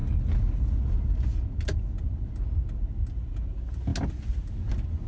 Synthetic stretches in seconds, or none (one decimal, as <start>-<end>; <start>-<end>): none